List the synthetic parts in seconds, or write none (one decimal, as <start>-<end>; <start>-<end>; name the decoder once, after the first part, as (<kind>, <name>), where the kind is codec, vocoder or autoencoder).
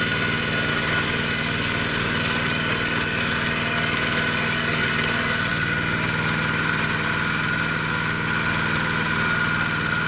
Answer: 0.7-5.5 (codec, DAC)